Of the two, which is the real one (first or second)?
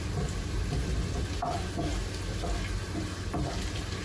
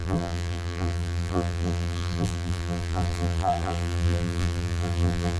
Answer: first